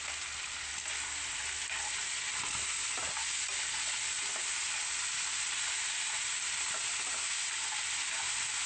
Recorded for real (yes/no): yes